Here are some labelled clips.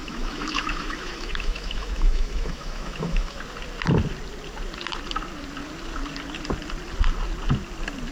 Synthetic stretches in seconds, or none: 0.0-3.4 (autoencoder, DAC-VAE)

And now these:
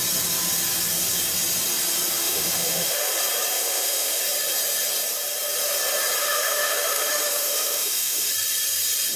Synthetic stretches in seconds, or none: 2.2-3.1 (autoencoder, DAC-VAE); 3.5-4.2; 6.2-8.3

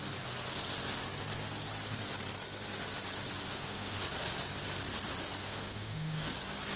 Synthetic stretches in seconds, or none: 3.5-4.0 (autoencoder, DAC-VAE); 5.4-6.3

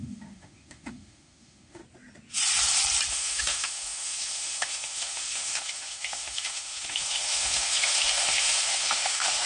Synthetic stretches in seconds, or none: 0.0-1.8 (autoencoder, DAC-VAE); 3.1-9.5

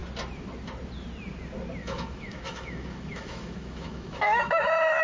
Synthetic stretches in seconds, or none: 1.8-5.0 (autoencoder, DAC-VAE)

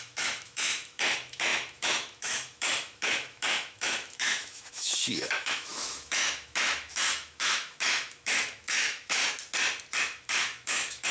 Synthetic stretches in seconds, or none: 0.0-9.2 (autoencoder, DAC-VAE); 10.0-11.1

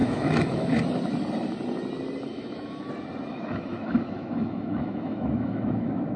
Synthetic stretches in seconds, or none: 0.0-0.8 (autoencoder, DAC-VAE); 2.3-2.9; 3.3-6.2